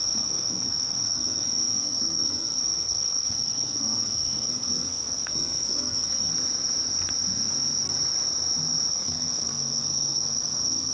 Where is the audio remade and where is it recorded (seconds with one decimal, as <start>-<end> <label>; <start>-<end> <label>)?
0.0-6.3 remade; 6.3-8.9 recorded; 8.9-10.9 remade